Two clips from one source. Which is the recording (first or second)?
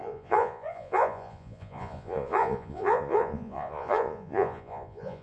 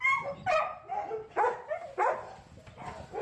second